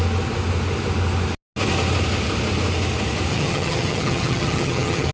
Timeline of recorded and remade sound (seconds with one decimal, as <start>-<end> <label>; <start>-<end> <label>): 0.0-3.3 recorded; 3.3-5.1 remade